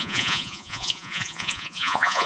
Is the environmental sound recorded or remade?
remade